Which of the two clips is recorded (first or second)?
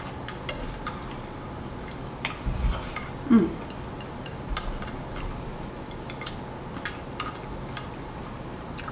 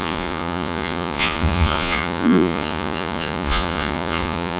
first